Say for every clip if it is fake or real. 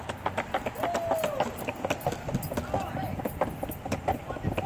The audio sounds real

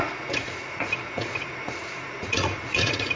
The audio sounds fake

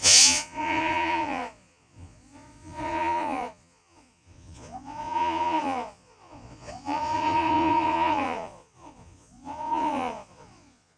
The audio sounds fake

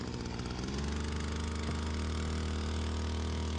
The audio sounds real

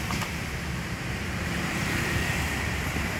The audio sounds fake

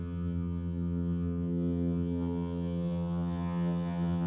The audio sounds fake